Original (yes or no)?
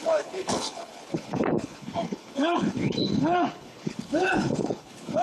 no